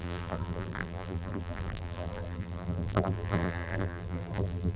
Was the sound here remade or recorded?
remade